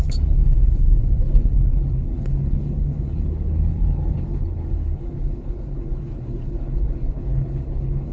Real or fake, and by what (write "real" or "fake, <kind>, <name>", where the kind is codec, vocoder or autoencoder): fake, codec, HILCodec